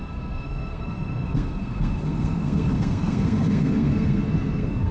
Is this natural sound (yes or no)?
no